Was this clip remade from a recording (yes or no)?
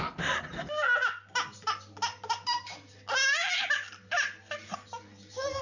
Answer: no